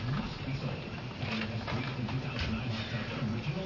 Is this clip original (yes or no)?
yes